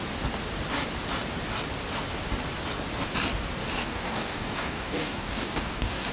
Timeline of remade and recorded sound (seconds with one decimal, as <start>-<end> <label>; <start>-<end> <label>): 0.0-3.8 recorded; 3.8-6.1 remade